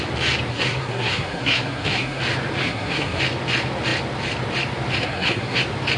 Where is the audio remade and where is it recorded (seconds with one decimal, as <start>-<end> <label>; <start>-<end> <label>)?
0.0-0.5 recorded; 0.5-2.2 remade; 2.2-2.6 recorded; 2.6-3.2 remade; 3.2-5.0 recorded; 5.0-5.6 remade; 5.6-6.0 recorded